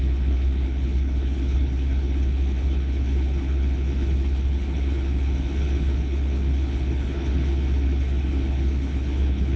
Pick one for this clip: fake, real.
fake